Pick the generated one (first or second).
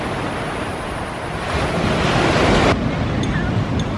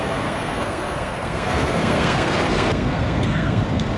second